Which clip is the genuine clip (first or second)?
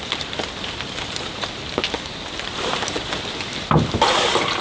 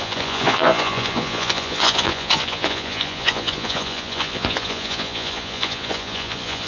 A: first